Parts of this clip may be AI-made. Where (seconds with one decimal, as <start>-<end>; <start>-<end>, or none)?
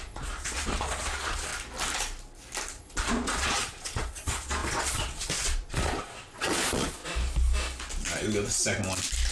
0.0-1.5; 2.7-7.0